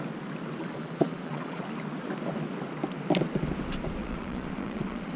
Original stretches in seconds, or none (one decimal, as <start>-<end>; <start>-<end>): 0.0-0.6; 1.6-4.0